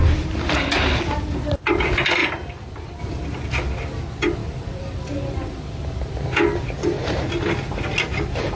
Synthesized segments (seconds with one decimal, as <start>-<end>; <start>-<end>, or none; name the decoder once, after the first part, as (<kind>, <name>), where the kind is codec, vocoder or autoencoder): 2.2-3.0 (vocoder, BigVGAN v2); 4.4-7.3